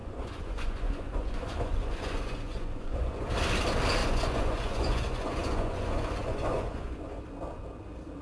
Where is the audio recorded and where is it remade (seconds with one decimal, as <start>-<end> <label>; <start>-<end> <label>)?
0.0-3.3 remade; 3.3-4.0 recorded; 4.0-7.2 remade; 7.2-8.2 recorded